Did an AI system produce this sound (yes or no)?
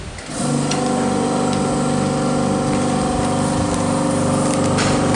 no